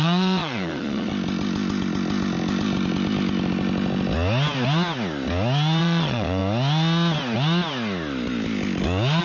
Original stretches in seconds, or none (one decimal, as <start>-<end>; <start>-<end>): 1.1-5.8; 6.4-9.2